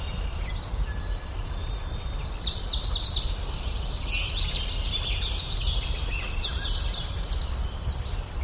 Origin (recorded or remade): remade